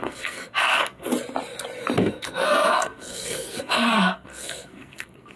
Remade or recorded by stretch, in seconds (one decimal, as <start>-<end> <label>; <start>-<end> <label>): 0.0-1.1 remade; 1.1-2.0 recorded; 2.0-5.4 remade